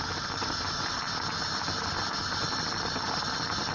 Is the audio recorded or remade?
recorded